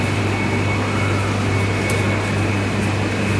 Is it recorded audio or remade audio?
recorded